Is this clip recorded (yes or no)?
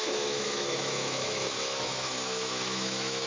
no